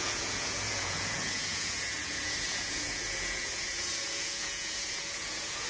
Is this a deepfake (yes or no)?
yes